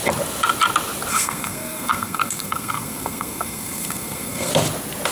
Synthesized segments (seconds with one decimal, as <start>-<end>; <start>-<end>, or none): 1.1-4.5